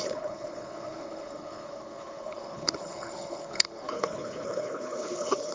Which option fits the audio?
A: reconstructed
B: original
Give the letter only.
A